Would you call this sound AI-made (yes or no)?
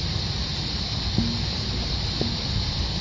no